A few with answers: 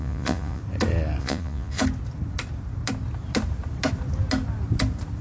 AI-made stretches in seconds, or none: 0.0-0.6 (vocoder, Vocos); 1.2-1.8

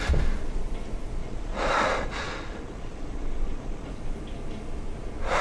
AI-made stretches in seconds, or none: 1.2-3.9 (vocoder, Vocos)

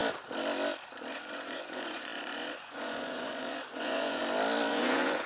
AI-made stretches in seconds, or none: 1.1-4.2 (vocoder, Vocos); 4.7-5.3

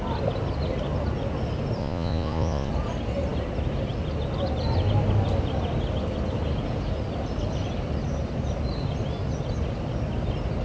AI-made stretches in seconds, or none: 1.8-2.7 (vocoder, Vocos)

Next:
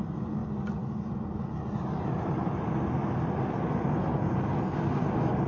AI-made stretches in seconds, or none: none